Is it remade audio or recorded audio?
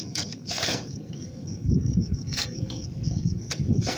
remade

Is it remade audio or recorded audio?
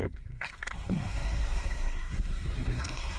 remade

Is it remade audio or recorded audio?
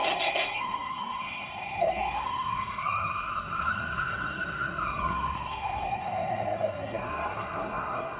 remade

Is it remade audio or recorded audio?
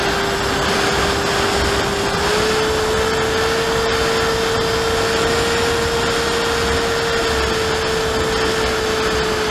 recorded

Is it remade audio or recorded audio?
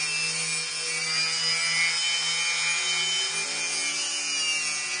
recorded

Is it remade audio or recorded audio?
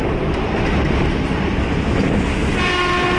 recorded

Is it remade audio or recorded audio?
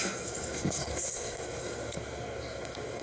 remade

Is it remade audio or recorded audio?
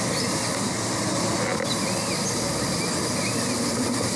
recorded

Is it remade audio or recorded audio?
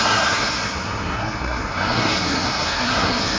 remade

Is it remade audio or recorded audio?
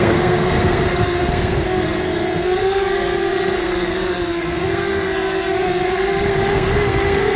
remade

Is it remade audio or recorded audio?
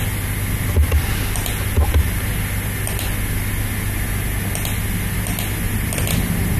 recorded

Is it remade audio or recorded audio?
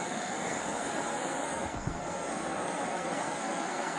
remade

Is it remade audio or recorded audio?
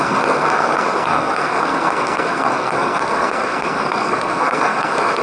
remade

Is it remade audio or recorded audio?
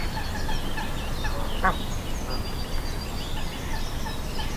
recorded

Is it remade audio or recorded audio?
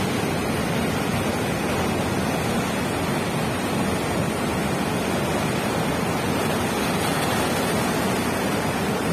recorded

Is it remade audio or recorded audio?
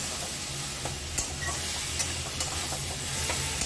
recorded